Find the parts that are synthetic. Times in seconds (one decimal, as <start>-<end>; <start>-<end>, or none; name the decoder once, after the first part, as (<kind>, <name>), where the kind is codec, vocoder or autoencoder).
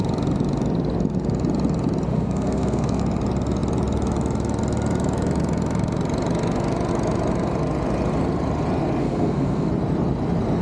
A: 2.1-3.0 (codec, SNAC); 9.0-9.7